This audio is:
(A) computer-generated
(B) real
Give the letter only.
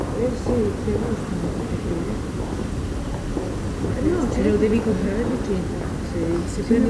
B